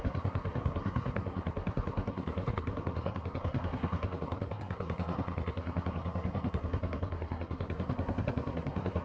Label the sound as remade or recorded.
remade